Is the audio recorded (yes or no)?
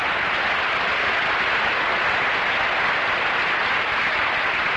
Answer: yes